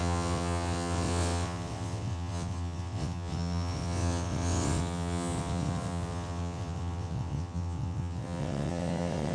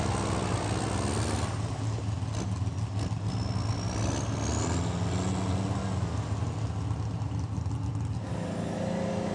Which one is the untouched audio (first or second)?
second